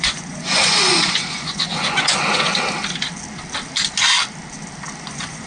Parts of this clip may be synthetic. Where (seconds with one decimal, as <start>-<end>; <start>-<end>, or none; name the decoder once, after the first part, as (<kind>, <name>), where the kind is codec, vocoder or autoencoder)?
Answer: 0.0-2.5 (vocoder, Vocos); 5.0-5.5